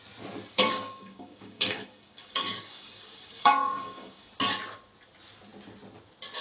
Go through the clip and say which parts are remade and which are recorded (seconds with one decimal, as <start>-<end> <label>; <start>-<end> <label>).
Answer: 0.0-0.5 recorded; 0.5-4.3 remade; 4.3-6.4 recorded